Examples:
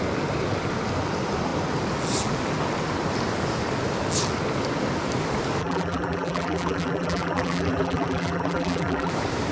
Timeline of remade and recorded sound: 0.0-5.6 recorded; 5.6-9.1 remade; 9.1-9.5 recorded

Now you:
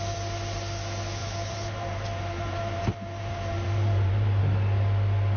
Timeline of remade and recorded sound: 0.0-1.2 recorded; 1.2-4.4 remade; 4.4-5.4 recorded

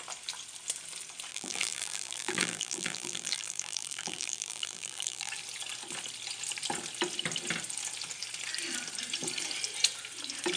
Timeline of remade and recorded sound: 0.0-1.3 recorded; 1.3-5.3 remade; 5.3-10.6 recorded

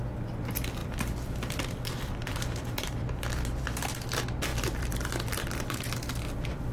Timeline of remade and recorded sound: 0.0-0.8 recorded; 0.8-3.6 remade; 3.6-4.5 recorded; 4.5-5.9 remade; 5.9-6.7 recorded

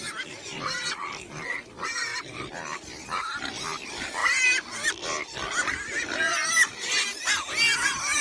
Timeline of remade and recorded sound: 0.0-2.1 recorded; 2.1-3.8 remade; 3.8-4.2 recorded; 4.2-5.7 remade; 5.7-6.3 recorded; 6.3-7.5 remade; 7.5-8.2 recorded